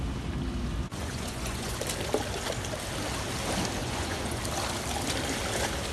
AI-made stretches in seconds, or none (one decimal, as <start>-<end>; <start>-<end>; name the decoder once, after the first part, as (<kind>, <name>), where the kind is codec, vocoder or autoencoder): 0.9-1.8 (vocoder, Vocos); 3.8-4.4